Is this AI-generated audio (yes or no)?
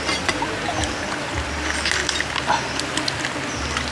no